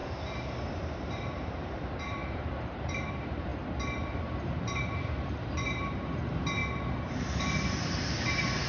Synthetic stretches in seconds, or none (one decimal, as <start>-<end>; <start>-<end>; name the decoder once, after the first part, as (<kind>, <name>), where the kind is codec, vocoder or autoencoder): 0.7-3.5 (vocoder, BigVGAN v2); 4.1-6.6; 8.0-8.7